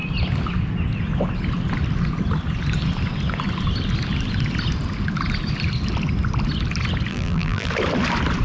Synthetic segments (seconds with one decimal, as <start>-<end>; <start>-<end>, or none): 7.1-7.7